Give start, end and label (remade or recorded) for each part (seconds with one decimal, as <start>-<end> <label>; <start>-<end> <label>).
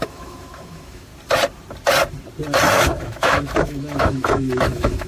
0.0-1.1 remade; 1.1-2.7 recorded; 2.7-5.1 remade